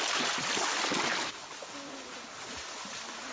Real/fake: real